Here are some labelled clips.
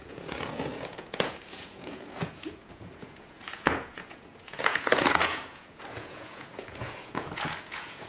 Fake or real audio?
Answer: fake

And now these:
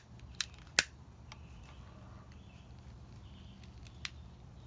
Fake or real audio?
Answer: real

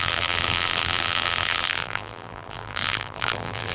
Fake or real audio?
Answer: fake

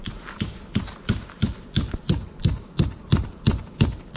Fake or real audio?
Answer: real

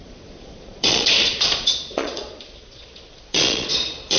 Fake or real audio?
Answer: fake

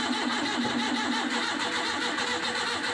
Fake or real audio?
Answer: real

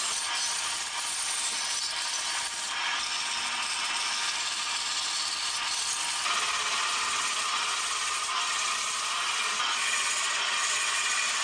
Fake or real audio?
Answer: real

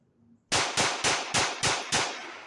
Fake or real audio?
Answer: real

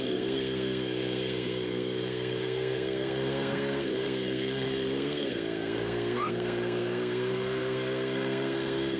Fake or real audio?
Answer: fake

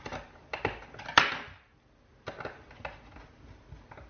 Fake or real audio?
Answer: real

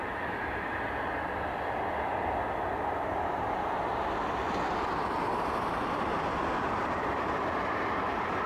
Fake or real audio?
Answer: real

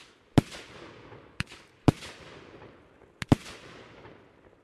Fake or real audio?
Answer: real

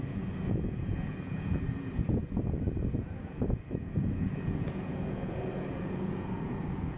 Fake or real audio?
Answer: fake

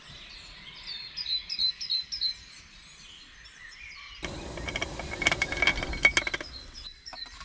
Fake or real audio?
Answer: fake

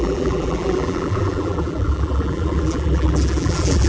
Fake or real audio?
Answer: fake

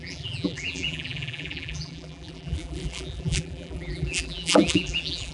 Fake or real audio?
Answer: fake